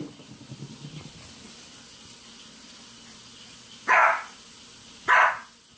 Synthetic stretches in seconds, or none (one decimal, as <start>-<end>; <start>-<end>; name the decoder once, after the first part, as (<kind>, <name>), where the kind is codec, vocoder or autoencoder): none